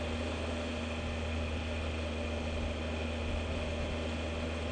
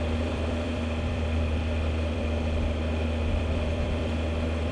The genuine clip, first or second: first